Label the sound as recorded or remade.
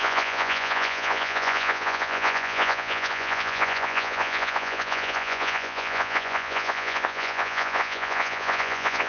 remade